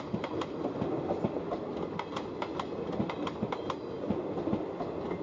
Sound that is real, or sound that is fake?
real